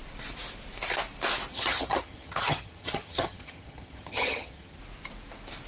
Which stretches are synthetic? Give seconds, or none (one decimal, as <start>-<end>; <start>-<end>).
1.5-4.8